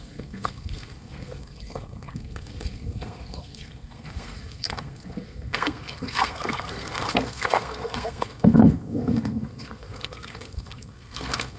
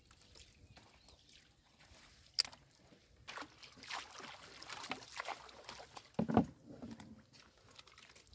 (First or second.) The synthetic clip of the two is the first